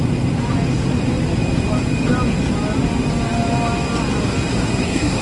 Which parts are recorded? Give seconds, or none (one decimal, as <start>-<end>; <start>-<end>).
0.0-4.5